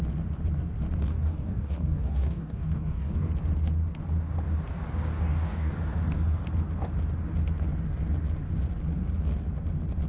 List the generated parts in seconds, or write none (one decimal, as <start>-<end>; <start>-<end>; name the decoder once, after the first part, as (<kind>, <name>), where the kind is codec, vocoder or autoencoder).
1.0-3.3 (codec, DAC); 5.1-5.7